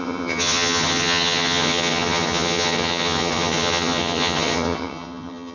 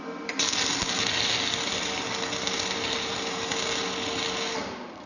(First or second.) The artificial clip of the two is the first